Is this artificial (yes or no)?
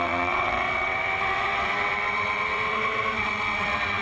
yes